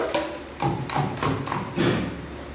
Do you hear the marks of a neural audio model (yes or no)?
no